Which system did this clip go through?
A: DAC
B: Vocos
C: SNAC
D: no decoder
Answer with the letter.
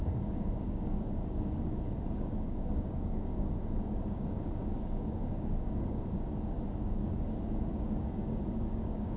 A